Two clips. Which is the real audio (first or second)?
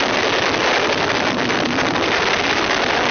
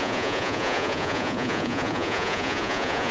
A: first